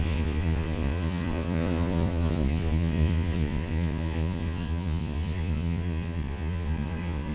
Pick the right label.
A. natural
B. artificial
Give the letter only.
B